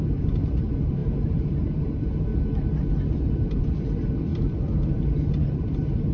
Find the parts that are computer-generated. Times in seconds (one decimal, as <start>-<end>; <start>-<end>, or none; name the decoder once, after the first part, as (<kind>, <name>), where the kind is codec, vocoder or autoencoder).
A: 0.0-2.3 (vocoder, BigVGAN v2); 3.3-6.1

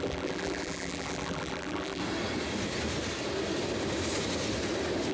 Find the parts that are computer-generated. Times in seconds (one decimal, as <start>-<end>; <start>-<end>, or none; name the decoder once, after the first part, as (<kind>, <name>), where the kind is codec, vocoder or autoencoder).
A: 0.0-2.0 (vocoder, BigVGAN v2)